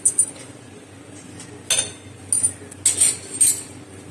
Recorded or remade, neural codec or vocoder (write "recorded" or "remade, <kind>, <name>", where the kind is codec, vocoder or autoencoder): recorded